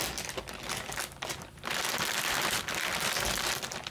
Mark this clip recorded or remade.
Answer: recorded